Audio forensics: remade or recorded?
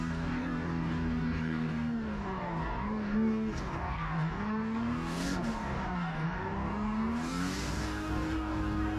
remade